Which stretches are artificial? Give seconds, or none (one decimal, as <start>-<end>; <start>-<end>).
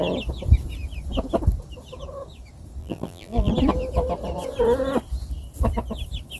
2.8-3.5